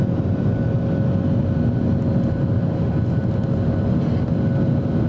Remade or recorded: recorded